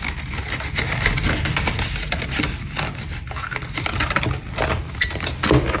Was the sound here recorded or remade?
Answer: recorded